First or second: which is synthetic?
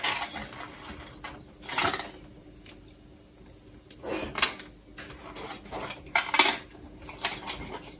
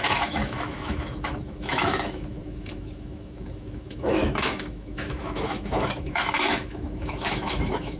second